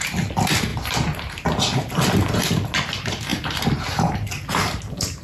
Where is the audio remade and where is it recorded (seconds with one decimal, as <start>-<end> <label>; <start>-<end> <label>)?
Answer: 0.0-5.2 recorded